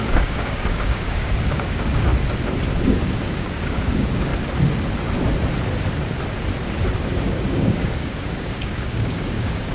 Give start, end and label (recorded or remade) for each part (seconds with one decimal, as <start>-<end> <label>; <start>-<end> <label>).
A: 0.0-2.1 remade; 2.1-2.8 recorded; 2.8-4.3 remade; 4.3-7.2 recorded; 7.2-9.7 remade